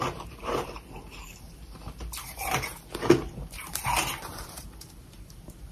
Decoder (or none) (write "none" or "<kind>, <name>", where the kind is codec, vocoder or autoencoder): vocoder, BigVGAN v2